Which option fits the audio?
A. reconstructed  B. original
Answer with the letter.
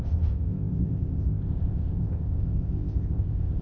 A